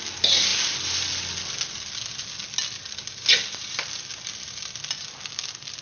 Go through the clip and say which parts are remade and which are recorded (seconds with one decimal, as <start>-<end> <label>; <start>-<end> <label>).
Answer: 0.0-5.8 recorded